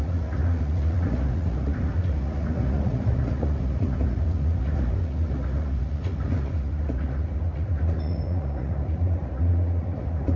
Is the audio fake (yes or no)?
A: yes